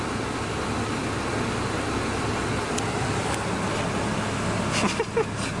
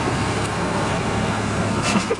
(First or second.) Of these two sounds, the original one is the first